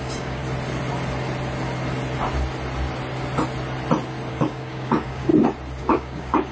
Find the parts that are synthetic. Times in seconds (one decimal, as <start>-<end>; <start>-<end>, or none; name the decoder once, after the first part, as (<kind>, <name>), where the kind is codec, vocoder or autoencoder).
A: 0.0-0.4 (codec, DAC); 4.3-5.3; 5.8-6.5